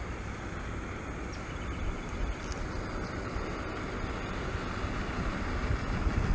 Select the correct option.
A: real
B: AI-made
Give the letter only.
A